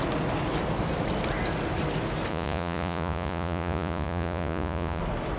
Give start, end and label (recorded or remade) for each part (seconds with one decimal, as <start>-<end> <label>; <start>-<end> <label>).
0.0-2.3 recorded; 2.3-5.0 remade; 5.0-5.4 recorded